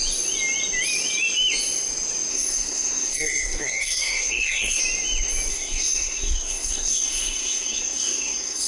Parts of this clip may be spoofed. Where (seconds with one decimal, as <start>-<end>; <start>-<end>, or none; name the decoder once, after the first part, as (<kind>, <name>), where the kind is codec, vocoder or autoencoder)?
2.3-4.8 (codec, SNAC); 5.5-8.7